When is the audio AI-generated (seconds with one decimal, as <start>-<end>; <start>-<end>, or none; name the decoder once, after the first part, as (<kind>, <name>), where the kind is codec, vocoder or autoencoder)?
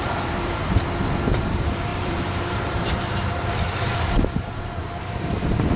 0.0-5.8 (vocoder, BigVGAN v2)